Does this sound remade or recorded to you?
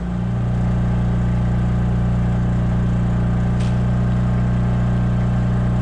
recorded